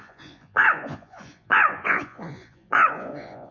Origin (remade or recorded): remade